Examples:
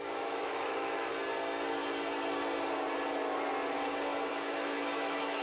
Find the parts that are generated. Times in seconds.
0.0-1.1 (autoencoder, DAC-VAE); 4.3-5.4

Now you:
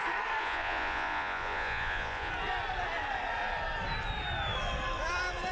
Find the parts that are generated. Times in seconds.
0.4-2.3 (vocoder, Vocos)

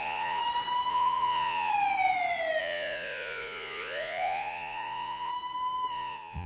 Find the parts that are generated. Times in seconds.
0.0-0.4 (vocoder, Vocos); 0.9-1.7; 2.6-5.3; 5.9-6.5

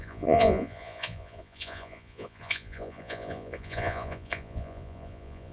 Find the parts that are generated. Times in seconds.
0.0-5.5 (vocoder, Vocos)

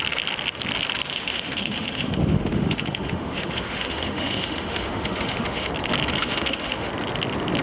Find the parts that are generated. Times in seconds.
1.1-5.7 (autoencoder, DAC-VAE); 6.2-6.9

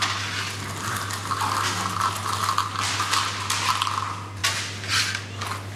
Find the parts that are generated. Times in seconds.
none

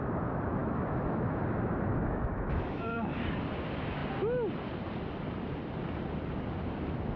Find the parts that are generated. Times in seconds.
0.6-1.4 (autoencoder, DAC-VAE); 1.9-3.2